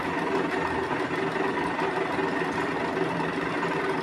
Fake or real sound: real